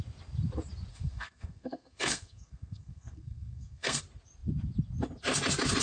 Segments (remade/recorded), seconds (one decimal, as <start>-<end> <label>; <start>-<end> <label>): 0.0-0.9 recorded; 0.9-4.0 remade; 4.0-5.8 recorded